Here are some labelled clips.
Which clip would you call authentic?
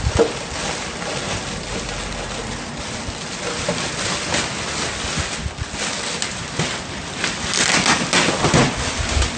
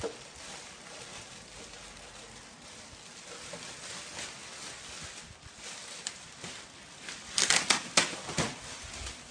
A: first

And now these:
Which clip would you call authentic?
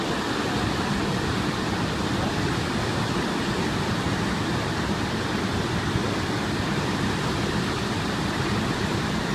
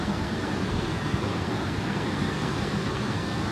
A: first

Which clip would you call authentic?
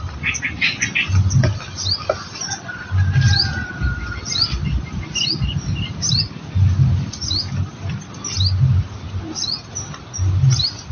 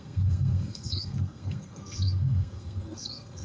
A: first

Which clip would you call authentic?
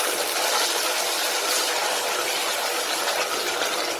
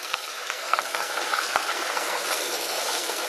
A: first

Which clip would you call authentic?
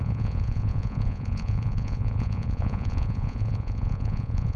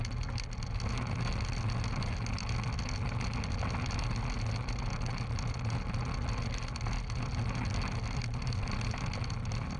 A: second